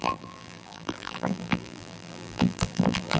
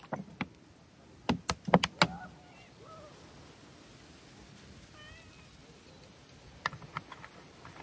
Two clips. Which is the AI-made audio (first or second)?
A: first